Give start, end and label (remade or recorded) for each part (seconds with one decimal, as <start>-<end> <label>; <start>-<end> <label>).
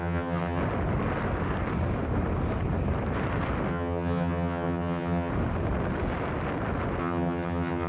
0.0-0.6 remade; 0.6-3.7 recorded; 3.7-5.3 remade; 5.3-7.0 recorded; 7.0-7.9 remade